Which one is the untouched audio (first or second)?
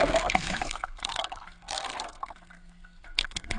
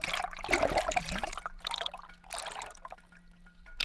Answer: second